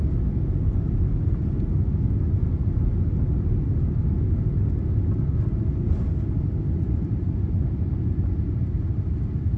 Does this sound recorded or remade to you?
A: recorded